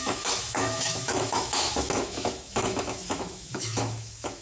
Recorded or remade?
remade